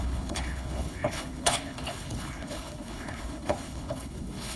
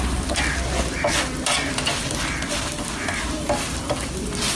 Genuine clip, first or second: second